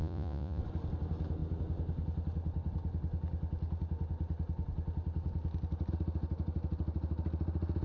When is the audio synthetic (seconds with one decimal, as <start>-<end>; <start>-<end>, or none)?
0.0-0.6